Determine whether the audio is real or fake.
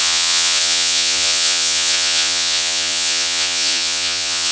fake